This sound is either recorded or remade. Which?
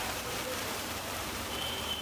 remade